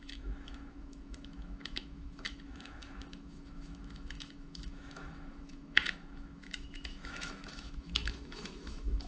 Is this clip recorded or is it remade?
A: remade